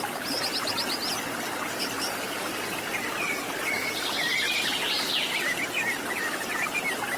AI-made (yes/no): no